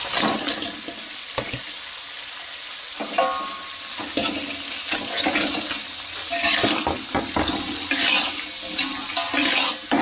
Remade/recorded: recorded